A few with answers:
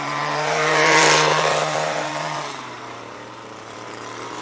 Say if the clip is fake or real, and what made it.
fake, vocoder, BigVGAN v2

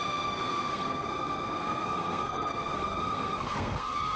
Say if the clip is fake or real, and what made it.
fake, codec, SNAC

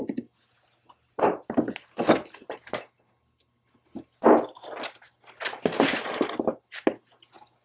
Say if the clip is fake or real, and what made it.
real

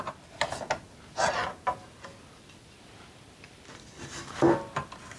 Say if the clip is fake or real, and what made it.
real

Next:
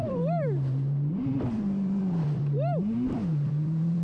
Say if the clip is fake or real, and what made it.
fake, vocoder, BigVGAN v2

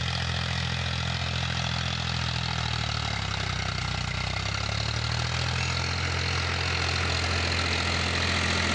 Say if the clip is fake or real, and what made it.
real